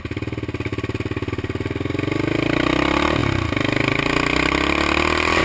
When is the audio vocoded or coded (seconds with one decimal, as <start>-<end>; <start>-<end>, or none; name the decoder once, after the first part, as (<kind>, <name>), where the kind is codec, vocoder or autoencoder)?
none